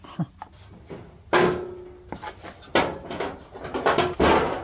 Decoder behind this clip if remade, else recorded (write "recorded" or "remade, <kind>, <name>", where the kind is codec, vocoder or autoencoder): recorded